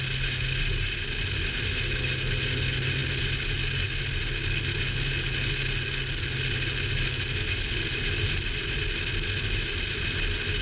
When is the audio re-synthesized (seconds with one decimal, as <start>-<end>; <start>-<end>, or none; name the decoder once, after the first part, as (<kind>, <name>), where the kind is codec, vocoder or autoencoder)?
none